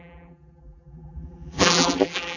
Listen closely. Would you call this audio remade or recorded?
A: remade